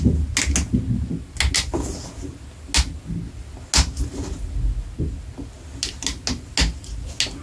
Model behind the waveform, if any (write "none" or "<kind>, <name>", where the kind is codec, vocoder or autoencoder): none